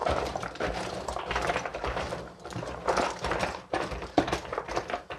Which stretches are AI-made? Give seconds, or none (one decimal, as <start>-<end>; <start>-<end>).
0.0-5.2